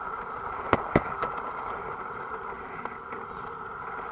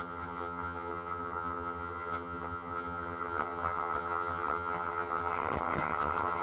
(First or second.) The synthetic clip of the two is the second